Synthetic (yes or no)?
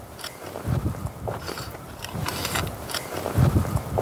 yes